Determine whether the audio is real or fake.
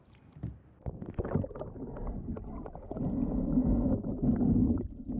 real